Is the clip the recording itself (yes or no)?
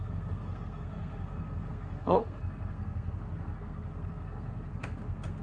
no